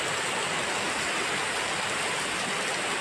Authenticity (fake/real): real